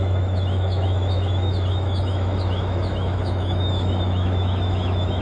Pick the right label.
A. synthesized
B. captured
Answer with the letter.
A